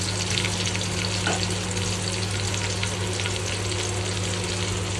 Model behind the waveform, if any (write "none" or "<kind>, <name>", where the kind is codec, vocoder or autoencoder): none